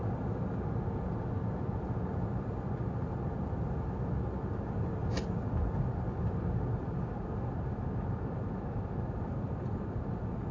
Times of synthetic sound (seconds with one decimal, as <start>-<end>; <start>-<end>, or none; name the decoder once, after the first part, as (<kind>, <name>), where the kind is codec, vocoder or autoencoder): none